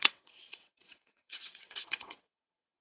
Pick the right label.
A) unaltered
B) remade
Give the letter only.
B